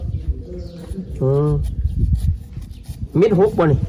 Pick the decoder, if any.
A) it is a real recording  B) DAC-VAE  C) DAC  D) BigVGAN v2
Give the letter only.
A